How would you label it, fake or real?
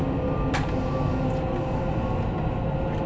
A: real